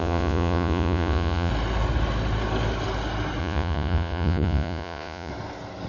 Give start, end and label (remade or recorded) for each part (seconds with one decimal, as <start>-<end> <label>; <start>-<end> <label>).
0.0-1.5 remade; 1.5-3.4 recorded; 3.4-5.3 remade; 5.3-5.9 recorded